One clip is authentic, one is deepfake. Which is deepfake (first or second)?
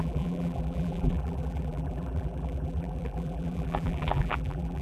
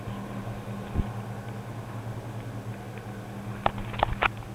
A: first